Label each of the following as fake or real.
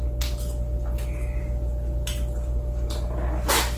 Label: real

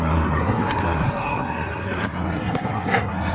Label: fake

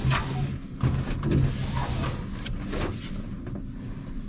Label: real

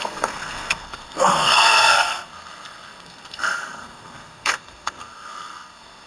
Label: fake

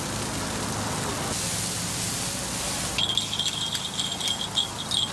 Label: real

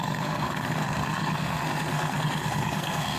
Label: fake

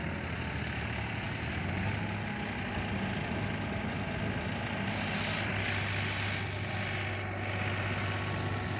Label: real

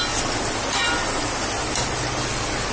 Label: real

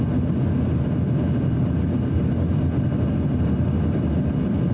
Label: real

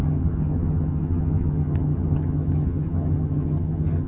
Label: fake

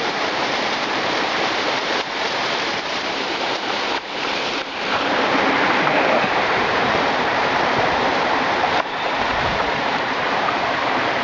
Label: fake